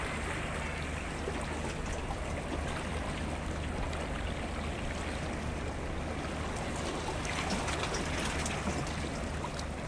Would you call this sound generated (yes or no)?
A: no